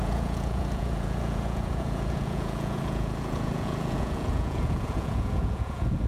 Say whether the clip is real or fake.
fake